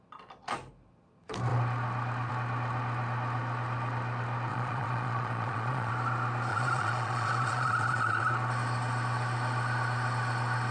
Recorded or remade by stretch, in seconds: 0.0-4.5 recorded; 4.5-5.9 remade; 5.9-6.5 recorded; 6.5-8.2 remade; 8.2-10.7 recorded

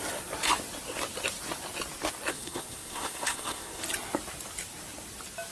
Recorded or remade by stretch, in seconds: 0.0-2.3 recorded; 2.3-3.8 remade; 3.8-5.5 recorded

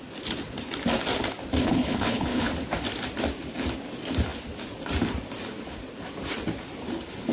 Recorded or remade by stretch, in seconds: 0.0-1.6 recorded; 1.6-2.5 remade; 2.5-7.3 recorded

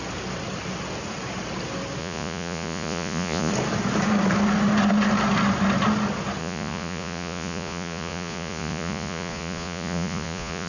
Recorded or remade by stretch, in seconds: 0.0-2.0 recorded; 2.0-3.5 remade; 3.5-6.4 recorded; 6.4-10.7 remade

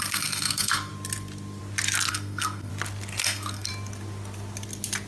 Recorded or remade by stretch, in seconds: 0.0-0.9 remade; 0.9-2.1 recorded; 2.1-2.7 remade; 2.7-3.2 recorded; 3.2-3.7 remade; 3.7-5.1 recorded

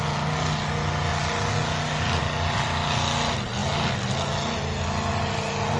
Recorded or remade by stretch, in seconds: 0.0-5.8 recorded

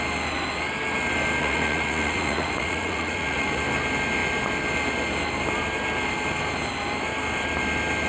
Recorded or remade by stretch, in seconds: 0.0-1.4 recorded; 1.4-3.6 remade; 3.6-8.1 recorded

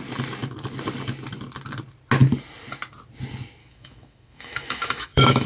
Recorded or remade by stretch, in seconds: 0.0-3.6 recorded; 3.6-5.5 remade